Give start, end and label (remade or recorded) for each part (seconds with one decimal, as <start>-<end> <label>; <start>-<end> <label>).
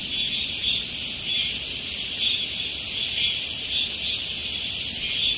0.0-5.4 recorded